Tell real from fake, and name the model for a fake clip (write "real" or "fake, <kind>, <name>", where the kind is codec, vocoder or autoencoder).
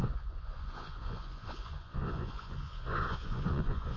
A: fake, vocoder, Vocos